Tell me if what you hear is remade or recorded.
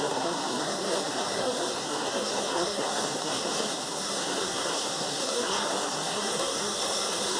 remade